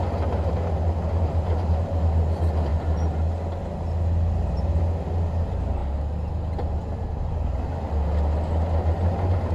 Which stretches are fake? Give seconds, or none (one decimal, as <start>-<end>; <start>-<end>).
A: none